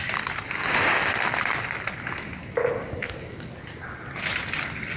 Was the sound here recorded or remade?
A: recorded